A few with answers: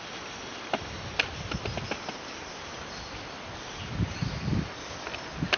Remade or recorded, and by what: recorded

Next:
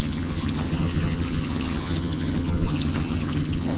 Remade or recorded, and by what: remade, vocoder, HiFi-GAN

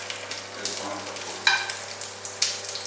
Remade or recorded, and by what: recorded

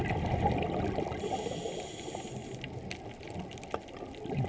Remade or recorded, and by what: recorded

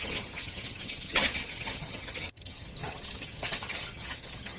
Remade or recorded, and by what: remade, vocoder, HiFi-GAN